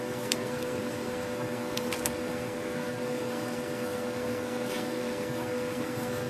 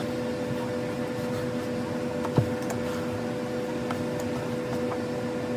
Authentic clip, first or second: second